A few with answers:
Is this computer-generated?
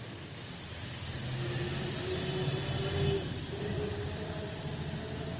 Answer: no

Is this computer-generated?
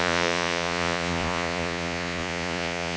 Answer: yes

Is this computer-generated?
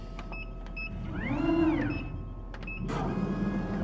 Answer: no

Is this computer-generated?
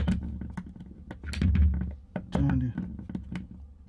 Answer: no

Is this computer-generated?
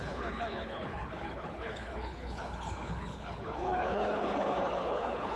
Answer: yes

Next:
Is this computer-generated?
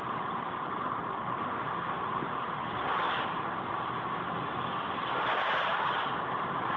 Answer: no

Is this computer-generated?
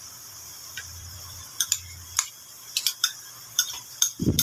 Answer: yes